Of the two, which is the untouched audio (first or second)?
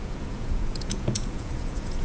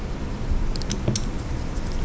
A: second